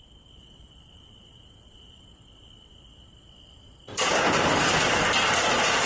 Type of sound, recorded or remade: recorded